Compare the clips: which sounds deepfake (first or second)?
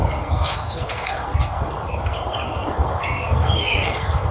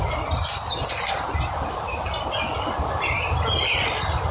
first